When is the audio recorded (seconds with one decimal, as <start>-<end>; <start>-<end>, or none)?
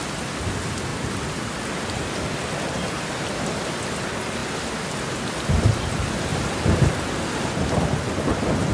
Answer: 0.0-0.9; 3.1-4.4; 5.1-6.3; 6.9-8.7